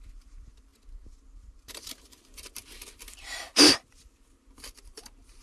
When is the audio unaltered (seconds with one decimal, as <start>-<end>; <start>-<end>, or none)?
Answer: 0.7-1.6; 2.6-4.8